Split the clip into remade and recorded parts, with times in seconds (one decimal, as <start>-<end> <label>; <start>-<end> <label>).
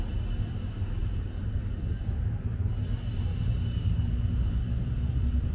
0.0-5.5 recorded